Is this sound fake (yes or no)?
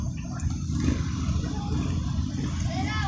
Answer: no